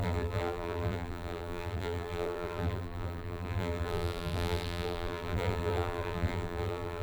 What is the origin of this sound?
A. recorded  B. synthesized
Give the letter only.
B